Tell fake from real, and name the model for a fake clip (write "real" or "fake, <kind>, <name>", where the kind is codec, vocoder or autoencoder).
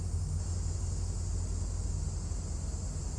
real